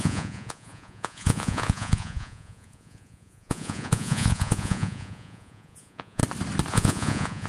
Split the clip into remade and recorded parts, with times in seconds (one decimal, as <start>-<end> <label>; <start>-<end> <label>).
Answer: 0.0-6.2 remade; 6.2-6.7 recorded; 6.7-7.5 remade